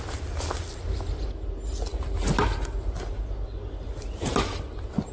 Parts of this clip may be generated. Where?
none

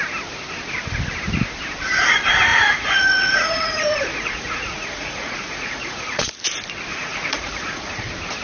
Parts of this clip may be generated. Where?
2.5-6.3; 6.9-8.0

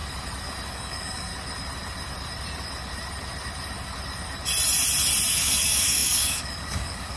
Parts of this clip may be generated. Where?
0.7-1.3; 5.3-7.2